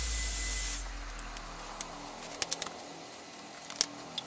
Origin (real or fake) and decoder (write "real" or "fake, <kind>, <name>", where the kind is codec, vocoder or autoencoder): real